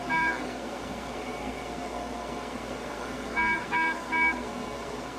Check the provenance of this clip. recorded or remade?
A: remade